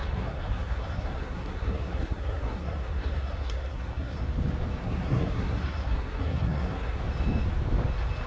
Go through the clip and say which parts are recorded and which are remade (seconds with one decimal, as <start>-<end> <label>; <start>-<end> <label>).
0.0-4.2 remade; 4.2-4.8 recorded; 4.8-7.0 remade; 7.0-8.3 recorded